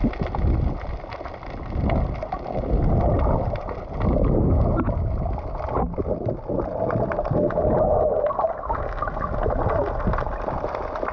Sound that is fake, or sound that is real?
real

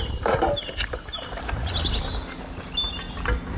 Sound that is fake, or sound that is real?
real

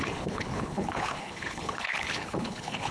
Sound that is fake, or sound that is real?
fake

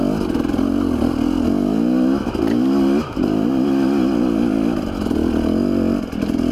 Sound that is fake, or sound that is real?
real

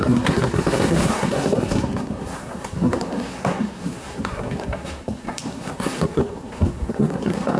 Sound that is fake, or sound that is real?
fake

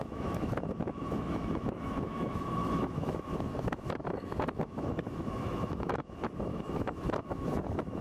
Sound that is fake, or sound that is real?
fake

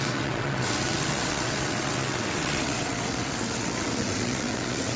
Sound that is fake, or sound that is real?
fake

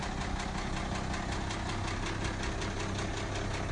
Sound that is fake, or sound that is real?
real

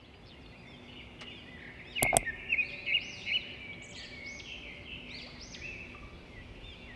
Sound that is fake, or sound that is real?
real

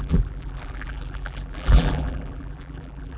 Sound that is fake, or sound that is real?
fake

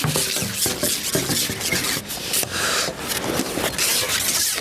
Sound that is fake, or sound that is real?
real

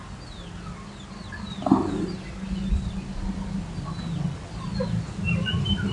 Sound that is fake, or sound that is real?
real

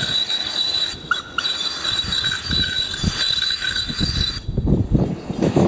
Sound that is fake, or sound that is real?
real